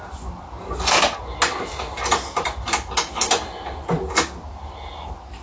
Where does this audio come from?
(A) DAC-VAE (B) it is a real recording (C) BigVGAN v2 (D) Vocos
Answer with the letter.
B